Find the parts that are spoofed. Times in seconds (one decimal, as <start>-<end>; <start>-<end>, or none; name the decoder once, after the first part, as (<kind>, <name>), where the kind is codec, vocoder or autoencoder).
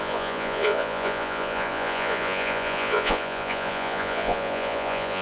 0.0-5.2 (vocoder, Vocos)